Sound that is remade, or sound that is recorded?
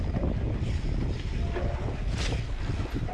recorded